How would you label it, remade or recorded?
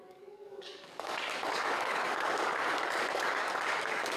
remade